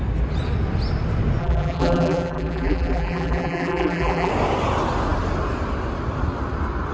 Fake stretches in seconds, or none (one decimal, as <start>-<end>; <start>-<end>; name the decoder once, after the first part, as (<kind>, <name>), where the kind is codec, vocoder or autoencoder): 1.4-4.3 (vocoder, BigVGAN v2)